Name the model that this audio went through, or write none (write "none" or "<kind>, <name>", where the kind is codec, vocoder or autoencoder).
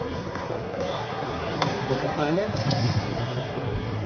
codec, SNAC